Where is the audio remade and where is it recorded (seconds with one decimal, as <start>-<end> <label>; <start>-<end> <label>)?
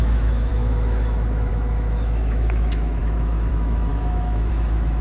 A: 0.0-5.0 remade